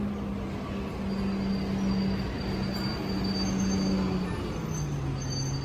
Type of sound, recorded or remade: recorded